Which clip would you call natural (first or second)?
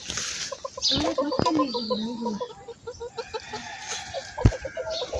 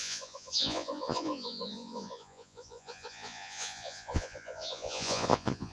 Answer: first